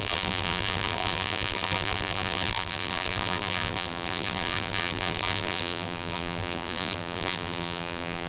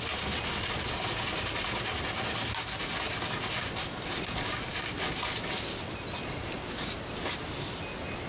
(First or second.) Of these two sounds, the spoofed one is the first